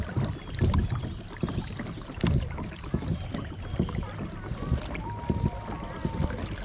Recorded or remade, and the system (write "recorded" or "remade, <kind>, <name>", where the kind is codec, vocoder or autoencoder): recorded